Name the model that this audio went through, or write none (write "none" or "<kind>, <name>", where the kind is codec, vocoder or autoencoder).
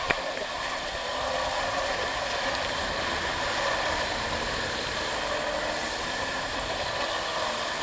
none